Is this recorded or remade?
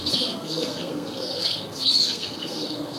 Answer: remade